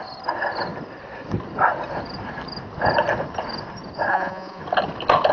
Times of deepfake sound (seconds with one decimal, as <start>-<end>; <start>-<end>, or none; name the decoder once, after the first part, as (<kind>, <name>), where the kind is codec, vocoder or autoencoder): 4.1-4.6 (vocoder, Vocos)